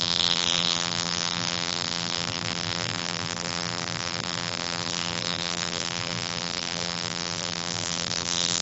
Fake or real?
fake